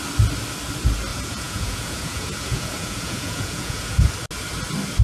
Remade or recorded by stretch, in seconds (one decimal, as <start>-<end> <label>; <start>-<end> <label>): 0.0-1.1 recorded; 1.1-4.1 remade; 4.1-5.0 recorded